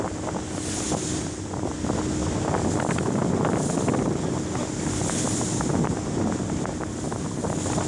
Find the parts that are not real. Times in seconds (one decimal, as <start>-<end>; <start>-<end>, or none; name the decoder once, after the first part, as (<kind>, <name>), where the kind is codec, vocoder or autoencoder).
none